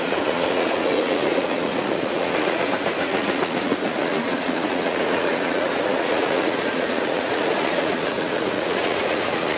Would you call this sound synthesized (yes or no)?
yes